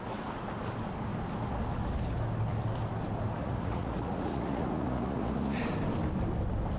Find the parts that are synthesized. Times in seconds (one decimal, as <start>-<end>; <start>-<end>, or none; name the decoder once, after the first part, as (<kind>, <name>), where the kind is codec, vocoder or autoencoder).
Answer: 3.4-5.6 (vocoder, Vocos)